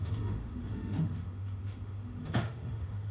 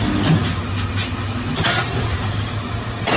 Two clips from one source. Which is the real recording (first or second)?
second